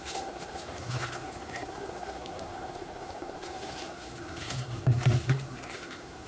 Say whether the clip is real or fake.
fake